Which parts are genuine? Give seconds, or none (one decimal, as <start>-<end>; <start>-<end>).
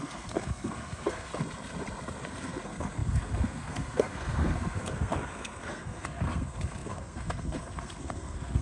1.3-2.3